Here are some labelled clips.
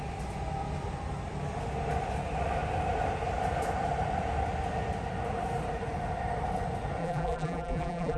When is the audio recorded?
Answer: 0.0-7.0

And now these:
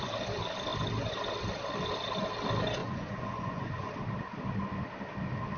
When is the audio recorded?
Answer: 0.0-2.8; 3.9-5.6

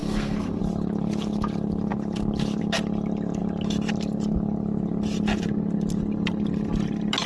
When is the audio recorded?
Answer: 0.6-7.3

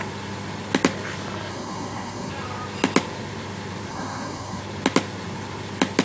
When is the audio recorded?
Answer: 0.0-1.5; 2.3-3.9; 4.6-6.0

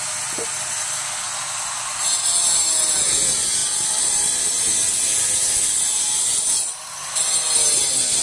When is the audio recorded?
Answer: 0.0-8.2

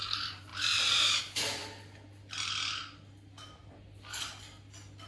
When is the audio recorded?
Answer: 1.6-5.1